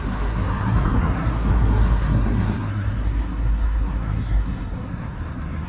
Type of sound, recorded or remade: remade